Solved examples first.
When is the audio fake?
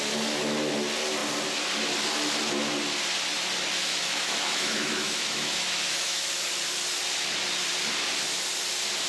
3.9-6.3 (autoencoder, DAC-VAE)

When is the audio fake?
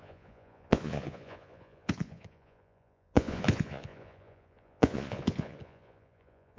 0.0-6.6 (vocoder, Vocos)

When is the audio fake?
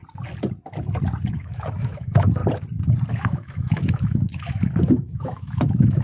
1.3-2.4 (autoencoder, DAC-VAE); 3.1-6.0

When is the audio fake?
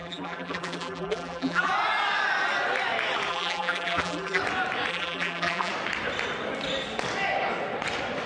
0.0-1.7 (vocoder, BigVGAN v2); 3.3-4.4; 4.9-5.7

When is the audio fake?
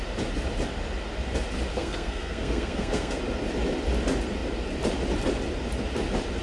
1.7-3.2 (codec, SNAC)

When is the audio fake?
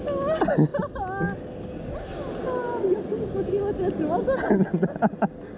none